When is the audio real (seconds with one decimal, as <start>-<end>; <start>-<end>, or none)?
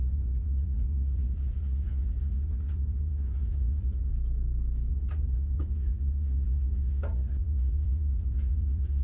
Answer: 4.1-4.9